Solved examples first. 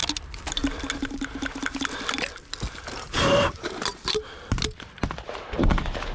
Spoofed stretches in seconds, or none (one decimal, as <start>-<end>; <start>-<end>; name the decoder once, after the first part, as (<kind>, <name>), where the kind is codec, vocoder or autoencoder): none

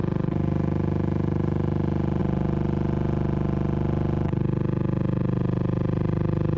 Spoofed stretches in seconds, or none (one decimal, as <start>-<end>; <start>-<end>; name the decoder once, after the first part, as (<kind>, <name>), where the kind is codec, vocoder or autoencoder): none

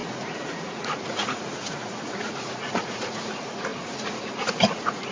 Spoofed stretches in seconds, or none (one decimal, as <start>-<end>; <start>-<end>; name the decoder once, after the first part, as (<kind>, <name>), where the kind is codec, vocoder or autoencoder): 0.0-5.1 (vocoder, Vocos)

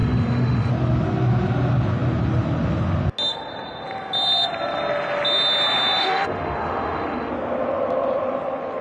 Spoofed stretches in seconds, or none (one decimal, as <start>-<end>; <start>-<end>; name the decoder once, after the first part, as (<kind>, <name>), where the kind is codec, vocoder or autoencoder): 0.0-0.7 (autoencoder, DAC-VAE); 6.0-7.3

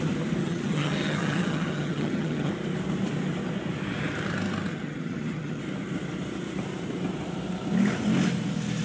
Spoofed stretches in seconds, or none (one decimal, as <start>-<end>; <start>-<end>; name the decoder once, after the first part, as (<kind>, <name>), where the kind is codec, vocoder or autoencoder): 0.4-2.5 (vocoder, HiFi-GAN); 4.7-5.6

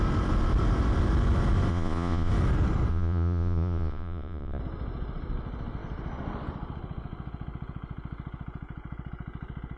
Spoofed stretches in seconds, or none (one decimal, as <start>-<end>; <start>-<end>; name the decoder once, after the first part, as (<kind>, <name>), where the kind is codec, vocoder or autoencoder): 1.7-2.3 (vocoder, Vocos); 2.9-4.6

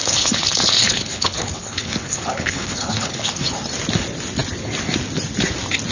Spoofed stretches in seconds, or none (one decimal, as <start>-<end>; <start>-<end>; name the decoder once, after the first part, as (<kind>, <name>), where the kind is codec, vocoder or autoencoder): 0.0-3.5 (codec, HILCodec)